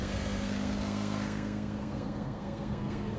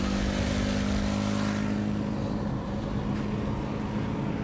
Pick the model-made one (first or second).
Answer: first